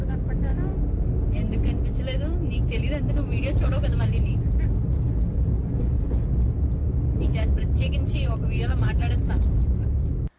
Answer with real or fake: real